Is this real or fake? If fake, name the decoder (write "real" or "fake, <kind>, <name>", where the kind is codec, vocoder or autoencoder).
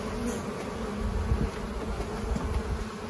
real